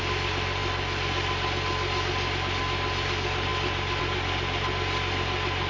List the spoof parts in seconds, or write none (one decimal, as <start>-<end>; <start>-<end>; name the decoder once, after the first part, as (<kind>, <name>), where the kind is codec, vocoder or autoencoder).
none